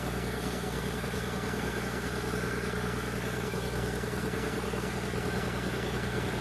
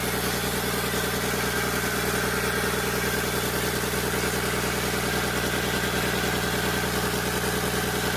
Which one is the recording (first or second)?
second